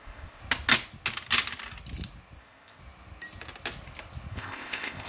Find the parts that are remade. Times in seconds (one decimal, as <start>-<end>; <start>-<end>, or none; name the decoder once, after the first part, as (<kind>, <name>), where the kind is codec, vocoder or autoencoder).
0.0-0.4 (codec, ZipCodec); 2.4-2.8; 4.3-5.1